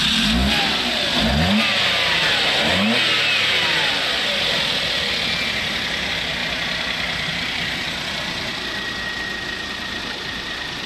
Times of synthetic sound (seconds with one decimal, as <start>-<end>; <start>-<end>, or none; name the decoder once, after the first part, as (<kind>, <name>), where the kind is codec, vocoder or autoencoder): none